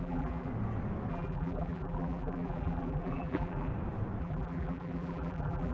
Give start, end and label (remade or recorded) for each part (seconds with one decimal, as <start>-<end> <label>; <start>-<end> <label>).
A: 0.0-0.5 remade; 0.5-1.1 recorded; 1.1-3.7 remade; 3.7-4.2 recorded; 4.2-5.7 remade